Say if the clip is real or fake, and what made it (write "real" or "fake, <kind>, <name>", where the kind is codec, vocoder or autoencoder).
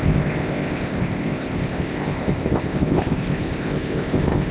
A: fake, codec, ZipCodec